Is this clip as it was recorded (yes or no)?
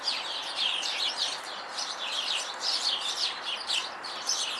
no